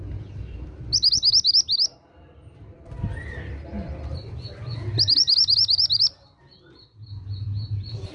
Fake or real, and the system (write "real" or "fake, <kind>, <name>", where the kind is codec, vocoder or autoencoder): real